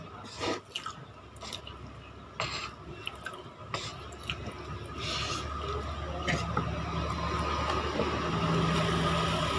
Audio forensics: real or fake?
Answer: real